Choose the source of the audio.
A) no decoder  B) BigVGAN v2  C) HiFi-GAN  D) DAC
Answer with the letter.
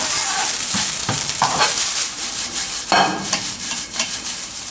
B